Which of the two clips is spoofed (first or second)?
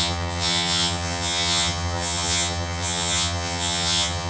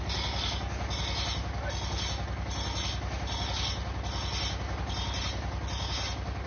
first